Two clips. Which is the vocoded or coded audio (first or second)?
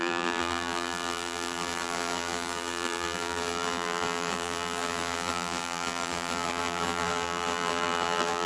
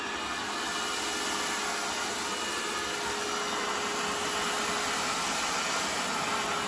first